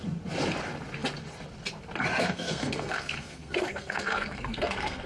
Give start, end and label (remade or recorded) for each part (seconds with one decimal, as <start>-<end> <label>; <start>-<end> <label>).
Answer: 0.0-2.2 recorded; 2.2-5.1 remade